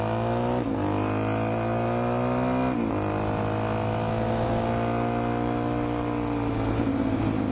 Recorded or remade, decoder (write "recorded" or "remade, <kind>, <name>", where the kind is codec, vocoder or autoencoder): recorded